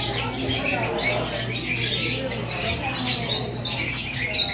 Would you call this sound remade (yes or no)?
no